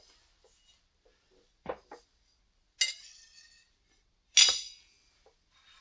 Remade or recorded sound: recorded